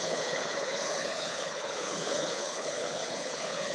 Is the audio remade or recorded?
remade